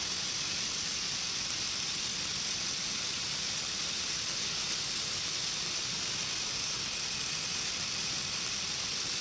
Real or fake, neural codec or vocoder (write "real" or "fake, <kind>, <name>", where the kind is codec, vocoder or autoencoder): real